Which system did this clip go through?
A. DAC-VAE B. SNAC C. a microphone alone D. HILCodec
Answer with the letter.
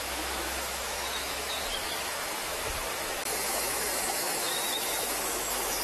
A